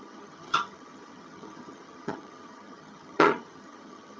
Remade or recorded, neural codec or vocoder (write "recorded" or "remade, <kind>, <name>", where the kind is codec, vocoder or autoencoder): remade, vocoder, HiFi-GAN